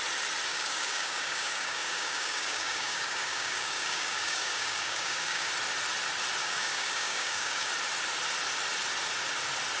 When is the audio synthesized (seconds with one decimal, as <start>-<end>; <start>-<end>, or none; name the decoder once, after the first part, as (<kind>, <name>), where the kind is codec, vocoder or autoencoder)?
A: 0.5-5.5 (codec, DAC); 6.4-7.7